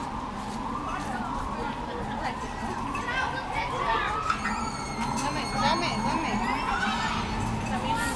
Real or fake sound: real